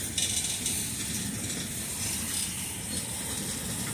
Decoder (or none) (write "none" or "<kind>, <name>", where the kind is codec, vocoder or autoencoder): none